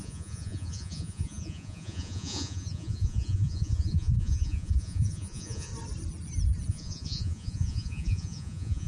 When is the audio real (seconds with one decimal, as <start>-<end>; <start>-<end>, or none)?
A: 5.7-6.7

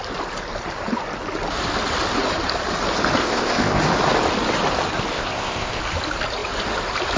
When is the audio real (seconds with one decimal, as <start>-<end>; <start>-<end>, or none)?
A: 0.0-3.2; 3.8-5.1; 5.8-7.2

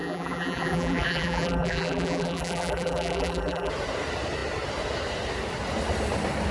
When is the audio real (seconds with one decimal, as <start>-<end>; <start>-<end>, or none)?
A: 3.7-6.5

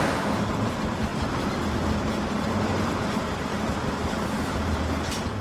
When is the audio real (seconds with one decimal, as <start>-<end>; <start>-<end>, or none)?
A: 3.5-4.4

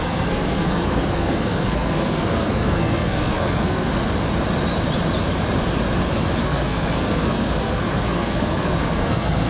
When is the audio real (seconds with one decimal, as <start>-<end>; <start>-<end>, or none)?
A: 3.9-6.4

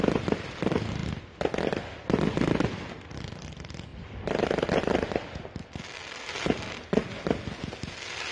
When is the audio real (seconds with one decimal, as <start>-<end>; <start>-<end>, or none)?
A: 0.0-8.3

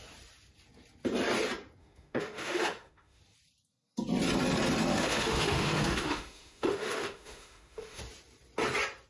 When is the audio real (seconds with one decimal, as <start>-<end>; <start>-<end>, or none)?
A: 0.0-1.8; 3.2-4.9; 8.0-9.1